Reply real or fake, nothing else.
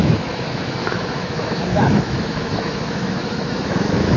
fake